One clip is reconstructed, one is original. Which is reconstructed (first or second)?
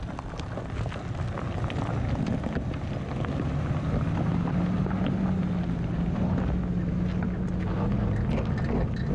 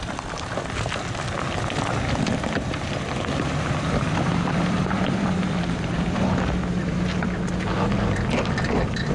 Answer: second